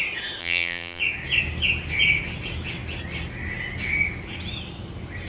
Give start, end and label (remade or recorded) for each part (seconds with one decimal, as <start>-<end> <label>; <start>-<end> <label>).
0.0-0.4 recorded; 0.4-1.0 remade; 1.0-5.3 recorded